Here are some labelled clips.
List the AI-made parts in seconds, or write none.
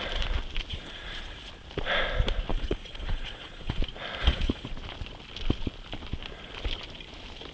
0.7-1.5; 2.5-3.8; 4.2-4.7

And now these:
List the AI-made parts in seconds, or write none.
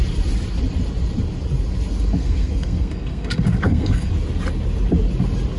2.2-4.1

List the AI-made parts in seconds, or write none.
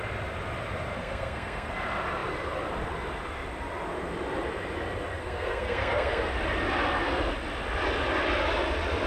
1.0-1.7; 5.2-6.3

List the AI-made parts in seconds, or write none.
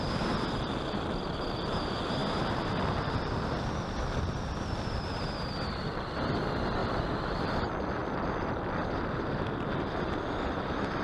6.8-7.3; 8.0-9.7